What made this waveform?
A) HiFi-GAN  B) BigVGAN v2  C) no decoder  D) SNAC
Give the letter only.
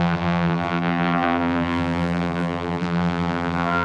B